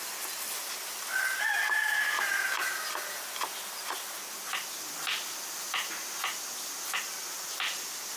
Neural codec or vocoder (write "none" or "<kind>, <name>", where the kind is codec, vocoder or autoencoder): none